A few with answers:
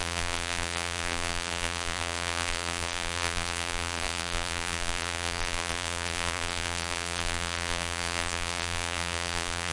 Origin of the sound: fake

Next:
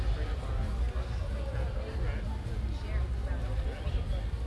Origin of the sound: real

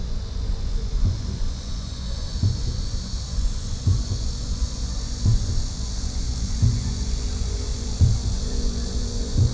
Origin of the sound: fake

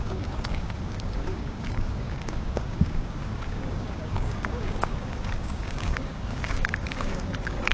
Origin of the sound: fake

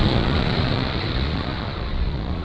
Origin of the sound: fake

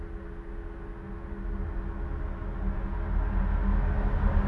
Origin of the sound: real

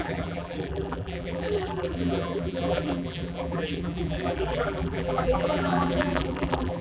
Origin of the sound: fake